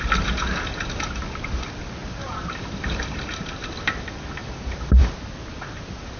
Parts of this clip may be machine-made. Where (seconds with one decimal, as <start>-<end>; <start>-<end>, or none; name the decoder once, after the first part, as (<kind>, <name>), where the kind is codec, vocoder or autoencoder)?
2.0-3.2 (vocoder, BigVGAN v2); 4.4-5.1